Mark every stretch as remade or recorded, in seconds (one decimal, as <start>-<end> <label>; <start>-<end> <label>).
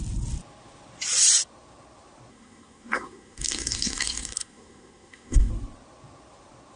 0.0-2.3 recorded; 2.3-5.5 remade; 5.5-6.8 recorded